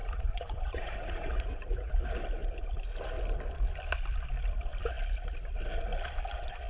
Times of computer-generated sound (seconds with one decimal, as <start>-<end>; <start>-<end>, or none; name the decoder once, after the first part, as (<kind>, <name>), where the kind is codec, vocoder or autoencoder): 0.0-1.9 (vocoder, Vocos)